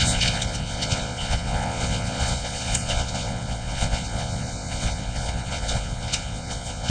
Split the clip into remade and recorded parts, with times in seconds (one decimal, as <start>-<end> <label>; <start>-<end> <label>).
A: 0.0-6.9 remade